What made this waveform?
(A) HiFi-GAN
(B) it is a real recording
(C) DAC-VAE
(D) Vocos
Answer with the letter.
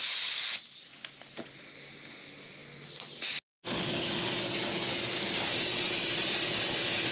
B